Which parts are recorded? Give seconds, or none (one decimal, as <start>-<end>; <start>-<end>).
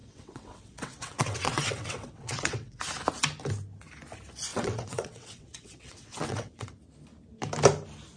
2.8-4.5; 6.7-8.2